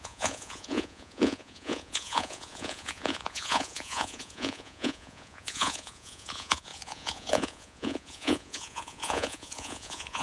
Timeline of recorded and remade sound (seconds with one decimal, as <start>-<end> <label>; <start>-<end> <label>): 0.0-10.2 remade

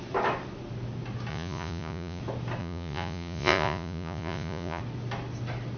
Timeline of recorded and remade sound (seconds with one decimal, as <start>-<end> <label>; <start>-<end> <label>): 0.0-1.3 recorded; 1.3-2.2 remade; 2.2-2.6 recorded; 2.6-4.8 remade; 4.8-5.8 recorded

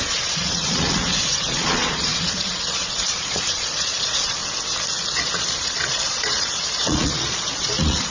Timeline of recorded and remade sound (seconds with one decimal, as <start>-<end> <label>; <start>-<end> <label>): 0.0-4.4 remade; 4.4-5.1 recorded; 5.1-8.1 remade

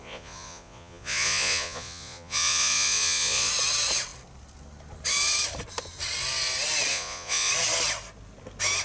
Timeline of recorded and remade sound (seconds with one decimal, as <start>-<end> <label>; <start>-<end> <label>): 0.0-3.5 remade; 3.5-6.9 recorded; 6.9-7.5 remade; 7.5-8.8 recorded